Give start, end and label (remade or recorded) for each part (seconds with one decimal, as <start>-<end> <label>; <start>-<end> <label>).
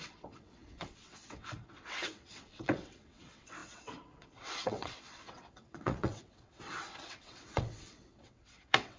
0.0-9.0 remade